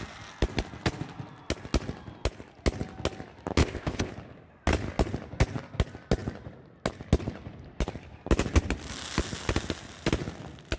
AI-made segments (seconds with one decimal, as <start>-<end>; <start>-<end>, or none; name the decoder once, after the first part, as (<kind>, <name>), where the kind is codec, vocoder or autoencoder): 3.6-4.1 (codec, ZipCodec)